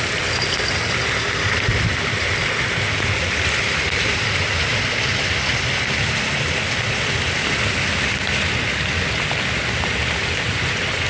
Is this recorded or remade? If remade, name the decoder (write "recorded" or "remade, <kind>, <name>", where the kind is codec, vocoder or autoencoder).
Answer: recorded